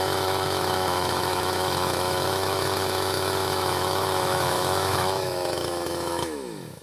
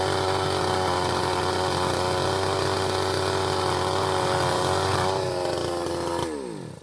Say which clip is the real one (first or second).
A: second